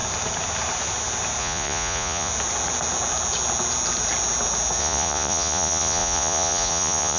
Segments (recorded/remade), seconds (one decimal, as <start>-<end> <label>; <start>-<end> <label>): 0.0-1.4 recorded; 1.4-2.3 remade; 2.3-4.8 recorded; 4.8-7.2 remade